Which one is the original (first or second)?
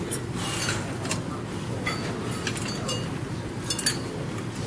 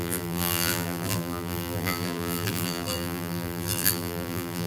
first